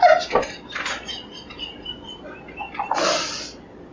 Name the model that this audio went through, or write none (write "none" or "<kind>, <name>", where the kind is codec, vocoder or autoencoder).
none